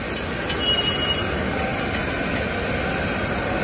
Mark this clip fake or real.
real